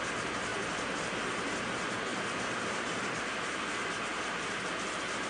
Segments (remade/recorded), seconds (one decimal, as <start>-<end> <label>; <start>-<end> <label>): 0.0-0.5 recorded; 0.5-1.3 remade; 1.3-2.1 recorded; 2.1-3.6 remade; 3.6-4.1 recorded; 4.1-4.6 remade; 4.6-5.3 recorded